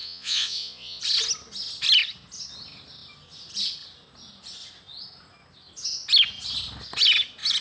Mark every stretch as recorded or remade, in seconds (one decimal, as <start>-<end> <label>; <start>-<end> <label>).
0.0-1.0 remade; 1.0-7.6 recorded